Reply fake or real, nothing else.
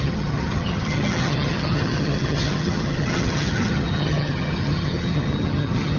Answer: fake